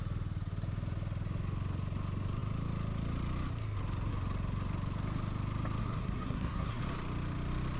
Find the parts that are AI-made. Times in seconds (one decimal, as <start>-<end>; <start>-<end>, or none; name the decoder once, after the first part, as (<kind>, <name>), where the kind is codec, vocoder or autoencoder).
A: 5.8-6.8 (codec, SNAC)